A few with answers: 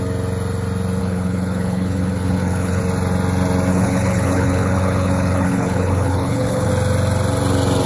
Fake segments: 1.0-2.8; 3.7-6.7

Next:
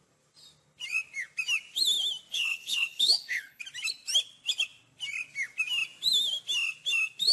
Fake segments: 2.3-3.6

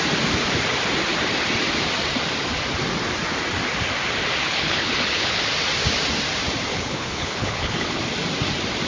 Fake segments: 4.4-5.4; 6.7-8.0

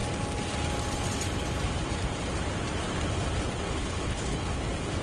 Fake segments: 3.8-4.6

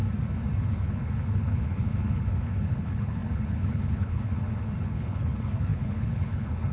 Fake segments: 0.6-6.7